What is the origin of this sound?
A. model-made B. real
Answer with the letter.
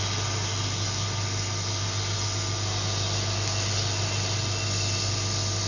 B